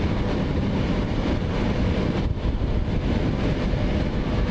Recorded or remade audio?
remade